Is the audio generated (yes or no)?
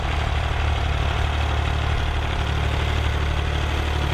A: no